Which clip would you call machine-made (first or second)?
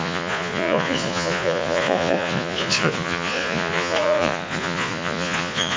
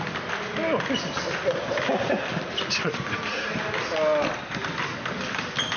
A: first